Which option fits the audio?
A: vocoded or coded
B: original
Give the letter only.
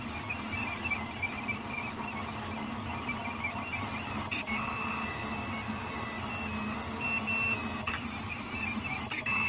B